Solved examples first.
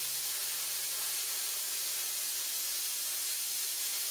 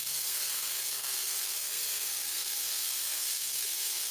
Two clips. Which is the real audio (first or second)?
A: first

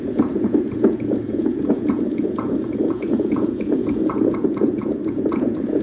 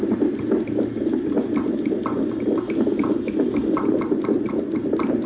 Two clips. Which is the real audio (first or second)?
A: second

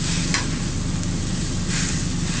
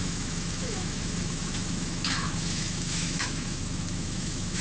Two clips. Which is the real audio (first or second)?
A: first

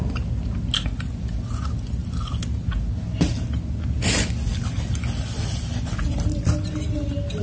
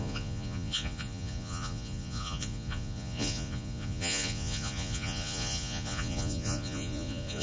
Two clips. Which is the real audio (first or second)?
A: first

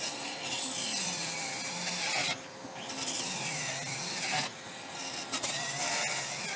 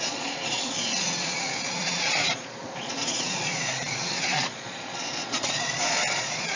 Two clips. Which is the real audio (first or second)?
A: first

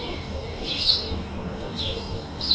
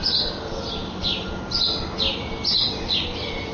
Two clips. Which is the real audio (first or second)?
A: second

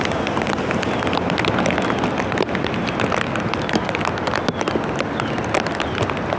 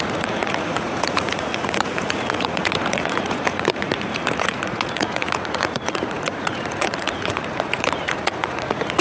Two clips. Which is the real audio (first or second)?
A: first